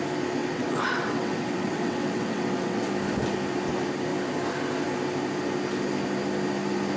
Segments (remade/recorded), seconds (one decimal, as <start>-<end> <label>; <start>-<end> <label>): 0.0-0.4 recorded; 0.4-2.9 remade; 2.9-7.0 recorded